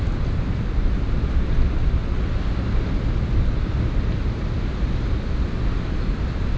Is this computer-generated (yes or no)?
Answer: no